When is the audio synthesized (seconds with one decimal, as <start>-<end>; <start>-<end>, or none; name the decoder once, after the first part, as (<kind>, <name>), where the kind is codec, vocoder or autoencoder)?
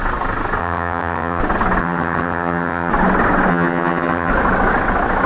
0.6-1.4 (vocoder, HiFi-GAN); 1.8-2.9; 3.5-4.3